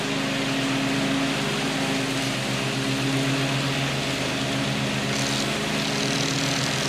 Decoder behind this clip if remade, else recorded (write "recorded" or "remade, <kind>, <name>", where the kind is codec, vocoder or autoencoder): recorded